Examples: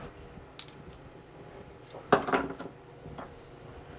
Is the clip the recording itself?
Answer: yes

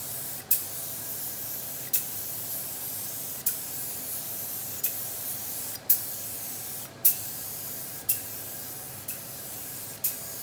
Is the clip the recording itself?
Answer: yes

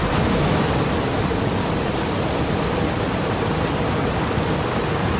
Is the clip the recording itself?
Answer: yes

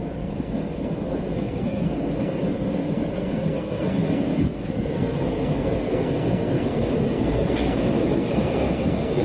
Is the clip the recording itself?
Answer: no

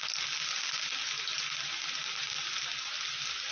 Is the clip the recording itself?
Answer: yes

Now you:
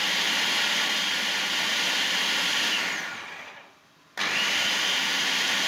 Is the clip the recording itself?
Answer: yes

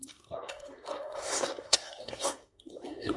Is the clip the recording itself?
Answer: no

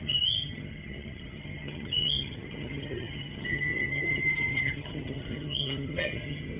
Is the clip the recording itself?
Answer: no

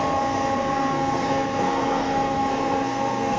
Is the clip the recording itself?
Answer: no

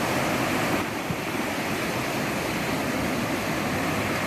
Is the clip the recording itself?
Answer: yes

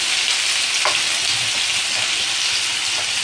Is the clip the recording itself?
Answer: yes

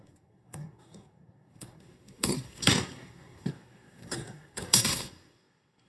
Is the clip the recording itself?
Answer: no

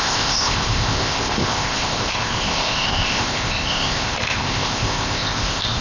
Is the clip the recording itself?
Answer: no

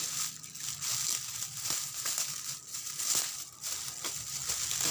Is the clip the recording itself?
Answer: yes